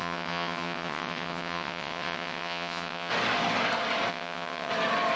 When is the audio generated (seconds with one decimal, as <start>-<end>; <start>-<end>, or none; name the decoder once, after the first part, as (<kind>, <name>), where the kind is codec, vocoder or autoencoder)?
0.0-3.1 (vocoder, WaveNeXt); 4.1-4.7